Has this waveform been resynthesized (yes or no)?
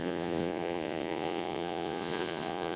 yes